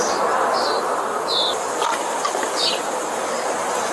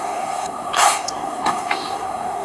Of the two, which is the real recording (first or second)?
first